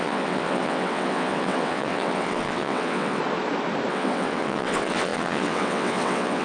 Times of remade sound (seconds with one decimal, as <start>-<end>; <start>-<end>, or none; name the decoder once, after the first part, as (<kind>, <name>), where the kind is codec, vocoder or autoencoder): 0.0-3.2 (vocoder, WaveNeXt); 3.9-6.4

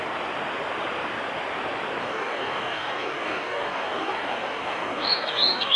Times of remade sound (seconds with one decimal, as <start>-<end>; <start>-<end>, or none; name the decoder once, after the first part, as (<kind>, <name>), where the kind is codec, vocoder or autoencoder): 2.0-5.8 (codec, DAC)

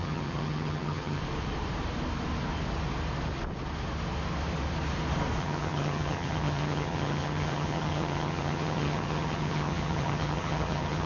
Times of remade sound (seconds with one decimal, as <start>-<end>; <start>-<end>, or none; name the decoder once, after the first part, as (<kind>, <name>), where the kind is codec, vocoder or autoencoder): 0.0-1.2 (vocoder, HiFi-GAN); 5.4-11.1

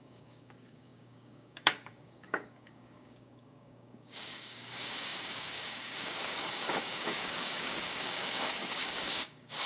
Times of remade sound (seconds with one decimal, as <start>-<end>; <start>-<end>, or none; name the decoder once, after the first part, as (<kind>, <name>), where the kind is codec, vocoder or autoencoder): 0.0-9.7 (codec, DAC)

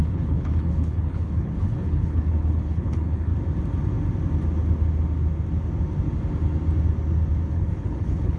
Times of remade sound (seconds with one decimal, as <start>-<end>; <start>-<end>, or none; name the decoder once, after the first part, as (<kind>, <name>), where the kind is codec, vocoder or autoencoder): 0.0-3.3 (codec, HILCodec); 7.5-8.4

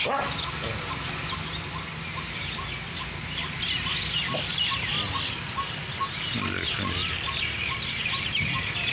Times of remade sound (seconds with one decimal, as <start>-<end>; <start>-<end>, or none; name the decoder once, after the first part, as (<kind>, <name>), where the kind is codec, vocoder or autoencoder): 0.0-4.9 (vocoder, BigVGAN v2); 6.2-8.9

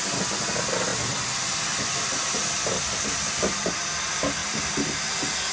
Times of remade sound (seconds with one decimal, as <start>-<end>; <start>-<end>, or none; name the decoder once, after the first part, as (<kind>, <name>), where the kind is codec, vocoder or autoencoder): none

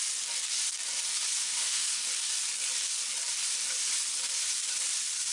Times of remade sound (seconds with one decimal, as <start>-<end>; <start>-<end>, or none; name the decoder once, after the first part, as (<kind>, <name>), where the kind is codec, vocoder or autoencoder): 1.4-2.1 (autoencoder, DAC-VAE)